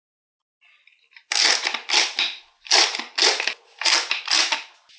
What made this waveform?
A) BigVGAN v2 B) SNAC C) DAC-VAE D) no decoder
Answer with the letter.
A